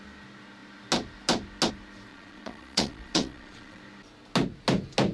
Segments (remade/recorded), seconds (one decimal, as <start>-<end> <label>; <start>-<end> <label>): 0.0-2.1 recorded; 2.1-3.8 remade; 3.8-5.1 recorded